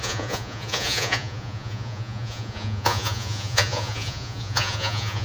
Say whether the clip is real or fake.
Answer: fake